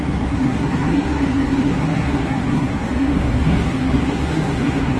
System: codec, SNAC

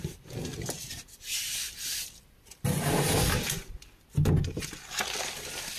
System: none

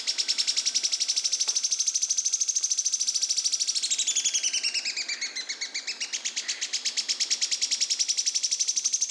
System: none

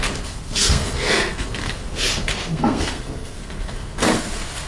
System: codec, SNAC